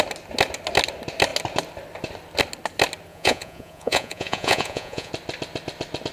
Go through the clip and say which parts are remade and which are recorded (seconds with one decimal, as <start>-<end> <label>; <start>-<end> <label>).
0.0-3.1 recorded; 3.1-5.1 remade; 5.1-6.1 recorded